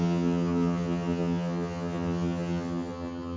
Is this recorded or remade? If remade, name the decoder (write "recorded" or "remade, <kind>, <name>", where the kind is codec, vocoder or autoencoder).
remade, vocoder, HiFi-GAN